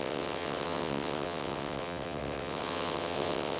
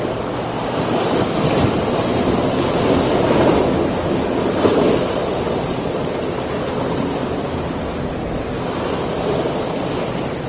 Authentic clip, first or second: second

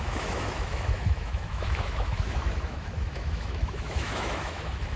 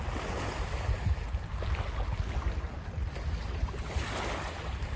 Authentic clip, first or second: second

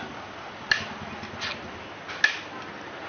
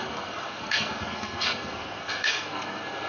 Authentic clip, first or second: first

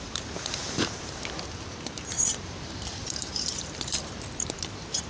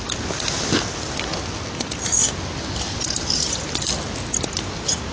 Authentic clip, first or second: second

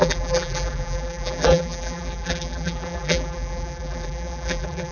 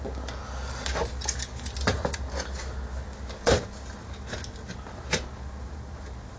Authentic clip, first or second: second